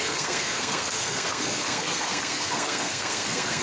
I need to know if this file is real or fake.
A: fake